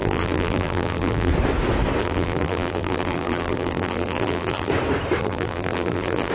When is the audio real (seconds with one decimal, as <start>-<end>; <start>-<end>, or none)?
1.3-2.0; 4.7-5.2